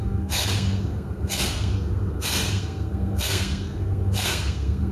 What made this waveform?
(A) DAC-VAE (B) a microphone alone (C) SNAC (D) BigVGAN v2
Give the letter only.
C